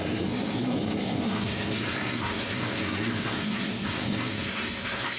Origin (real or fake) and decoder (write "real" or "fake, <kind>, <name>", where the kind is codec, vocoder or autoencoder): fake, codec, SNAC